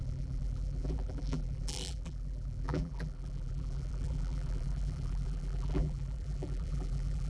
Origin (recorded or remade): remade